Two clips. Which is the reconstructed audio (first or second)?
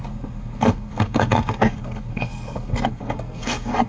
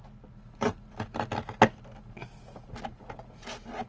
first